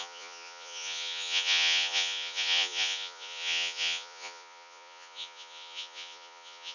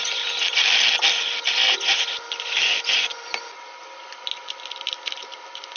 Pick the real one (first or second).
second